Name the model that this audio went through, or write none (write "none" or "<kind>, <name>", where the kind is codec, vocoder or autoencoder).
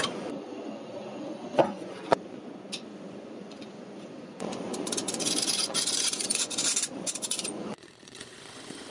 vocoder, Vocos